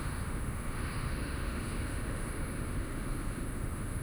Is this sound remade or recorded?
remade